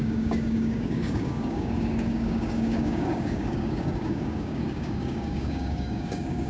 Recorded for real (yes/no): no